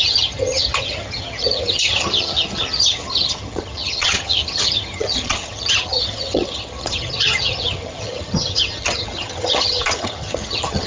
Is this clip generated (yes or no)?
yes